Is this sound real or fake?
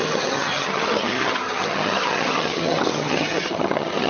fake